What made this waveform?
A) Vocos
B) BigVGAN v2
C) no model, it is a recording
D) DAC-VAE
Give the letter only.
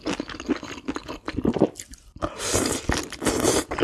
C